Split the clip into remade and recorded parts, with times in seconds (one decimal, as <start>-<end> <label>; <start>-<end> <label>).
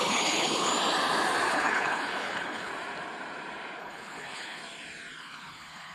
0.0-0.7 remade; 0.7-1.5 recorded; 1.5-2.7 remade; 2.7-3.8 recorded; 3.8-4.6 remade; 4.6-5.2 recorded; 5.2-5.9 remade